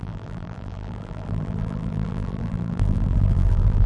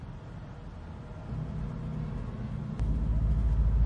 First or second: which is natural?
second